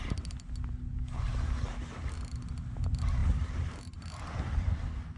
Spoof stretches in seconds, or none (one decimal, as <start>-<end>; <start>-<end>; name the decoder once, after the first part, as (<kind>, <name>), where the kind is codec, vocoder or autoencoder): none